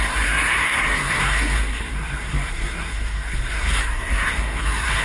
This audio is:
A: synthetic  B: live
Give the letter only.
A